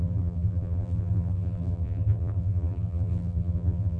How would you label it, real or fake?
fake